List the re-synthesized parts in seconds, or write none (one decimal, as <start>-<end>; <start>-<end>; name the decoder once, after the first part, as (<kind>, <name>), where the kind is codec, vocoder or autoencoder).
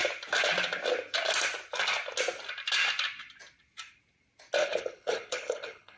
4.6-6.0 (codec, HILCodec)